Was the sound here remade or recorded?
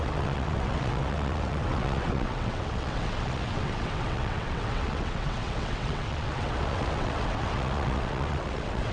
remade